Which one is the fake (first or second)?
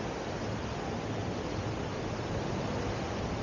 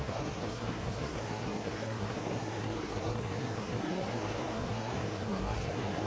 second